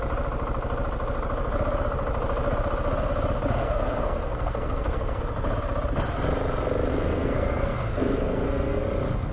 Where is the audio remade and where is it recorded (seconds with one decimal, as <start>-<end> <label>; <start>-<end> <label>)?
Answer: 0.0-3.6 recorded; 3.6-5.2 remade; 5.2-6.9 recorded; 6.9-8.8 remade; 8.8-9.3 recorded